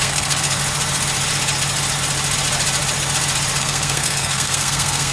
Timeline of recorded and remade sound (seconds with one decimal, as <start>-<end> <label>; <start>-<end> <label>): 0.0-0.6 remade; 0.6-3.6 recorded; 3.6-5.1 remade